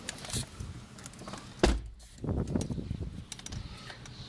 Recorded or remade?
recorded